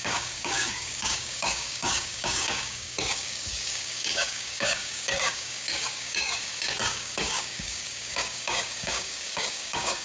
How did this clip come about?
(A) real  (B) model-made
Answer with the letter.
B